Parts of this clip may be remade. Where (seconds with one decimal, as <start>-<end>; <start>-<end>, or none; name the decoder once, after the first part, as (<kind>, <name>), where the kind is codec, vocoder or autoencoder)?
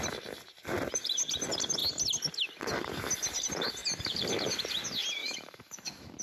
5.2-6.2 (autoencoder, DAC-VAE)